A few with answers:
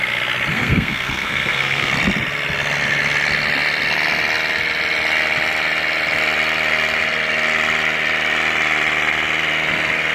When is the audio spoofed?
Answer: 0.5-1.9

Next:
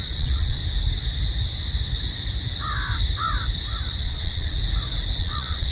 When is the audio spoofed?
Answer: 0.0-0.6; 4.0-4.6; 5.2-5.7

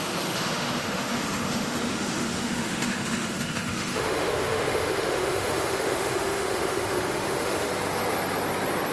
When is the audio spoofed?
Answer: 0.0-7.7

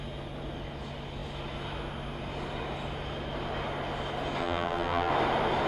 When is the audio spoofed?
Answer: 4.4-5.1

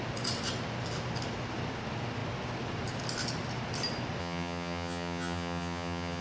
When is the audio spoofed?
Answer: 4.2-6.2